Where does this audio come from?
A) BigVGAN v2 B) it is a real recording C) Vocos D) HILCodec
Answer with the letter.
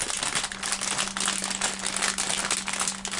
B